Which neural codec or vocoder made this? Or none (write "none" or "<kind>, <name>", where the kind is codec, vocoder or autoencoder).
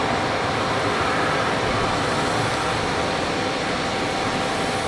none